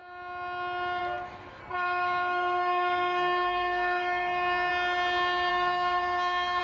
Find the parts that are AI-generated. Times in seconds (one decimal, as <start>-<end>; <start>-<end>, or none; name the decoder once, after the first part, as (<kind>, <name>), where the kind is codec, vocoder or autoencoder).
1.6-4.7 (codec, SNAC); 5.5-6.6